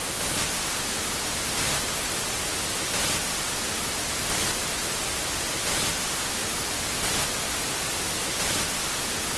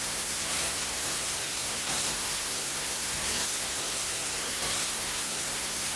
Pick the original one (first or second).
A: first